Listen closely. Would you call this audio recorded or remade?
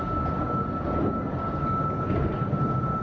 recorded